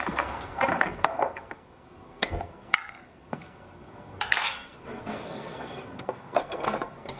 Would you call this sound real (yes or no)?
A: no